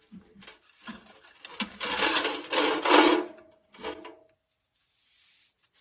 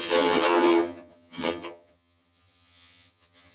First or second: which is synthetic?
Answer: second